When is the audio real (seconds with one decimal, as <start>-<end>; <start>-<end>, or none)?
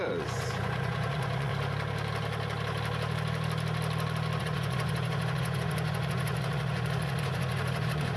1.5-4.4